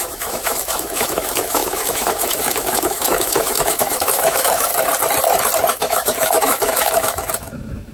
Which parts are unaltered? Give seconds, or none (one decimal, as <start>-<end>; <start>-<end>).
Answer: 4.7-5.7